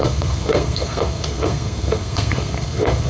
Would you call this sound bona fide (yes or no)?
no